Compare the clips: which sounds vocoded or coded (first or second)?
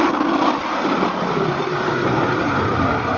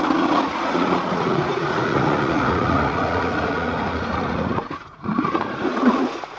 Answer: second